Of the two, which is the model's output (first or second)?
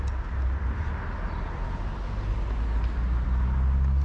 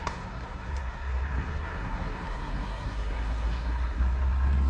second